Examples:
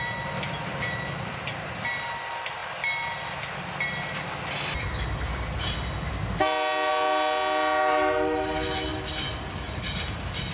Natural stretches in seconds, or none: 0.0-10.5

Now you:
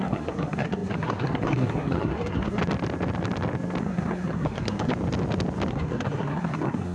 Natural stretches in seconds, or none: 2.6-3.8; 4.9-5.7

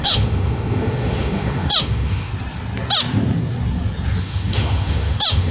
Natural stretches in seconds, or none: 2.3-4.2

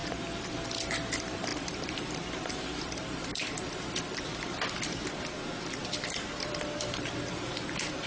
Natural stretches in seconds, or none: 0.0-1.1; 3.4-6.4

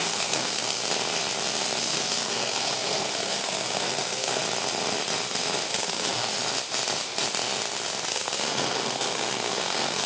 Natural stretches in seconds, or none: 0.8-1.8; 4.4-5.7; 6.3-8.1

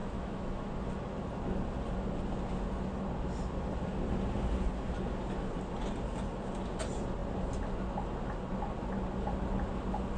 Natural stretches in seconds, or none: 0.7-10.2